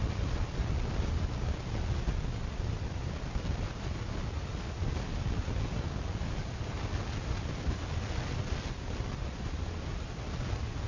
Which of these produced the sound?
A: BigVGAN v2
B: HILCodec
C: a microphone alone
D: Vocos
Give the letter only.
C